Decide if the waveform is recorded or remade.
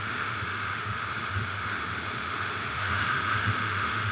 remade